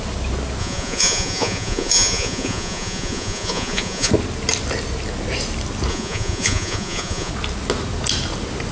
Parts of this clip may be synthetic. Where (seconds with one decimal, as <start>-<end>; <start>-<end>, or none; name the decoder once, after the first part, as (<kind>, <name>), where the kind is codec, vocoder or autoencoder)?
0.6-4.1 (vocoder, Vocos); 5.9-7.3